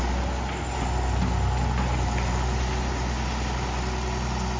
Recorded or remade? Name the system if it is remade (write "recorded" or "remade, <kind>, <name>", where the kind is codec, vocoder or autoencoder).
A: recorded